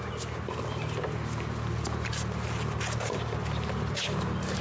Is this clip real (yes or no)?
yes